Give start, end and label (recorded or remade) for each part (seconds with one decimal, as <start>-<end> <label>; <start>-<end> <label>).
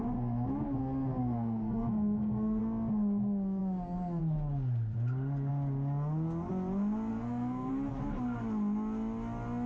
0.0-1.2 recorded; 1.2-2.6 remade; 2.6-7.1 recorded; 7.1-7.7 remade; 7.7-9.7 recorded